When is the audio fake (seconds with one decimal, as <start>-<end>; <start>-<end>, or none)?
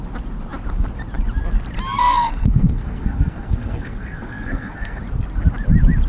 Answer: 2.0-5.0